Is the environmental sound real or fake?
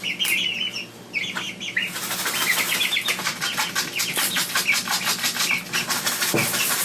real